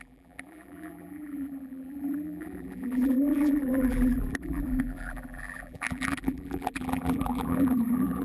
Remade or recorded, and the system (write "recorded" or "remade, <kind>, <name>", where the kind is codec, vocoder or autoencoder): remade, vocoder, BigVGAN v2